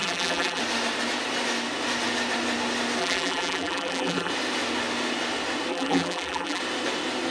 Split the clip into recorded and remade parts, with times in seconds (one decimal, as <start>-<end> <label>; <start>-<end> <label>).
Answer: 0.0-0.6 remade; 0.6-3.0 recorded; 3.0-4.3 remade; 4.3-5.7 recorded; 5.7-6.6 remade; 6.6-7.3 recorded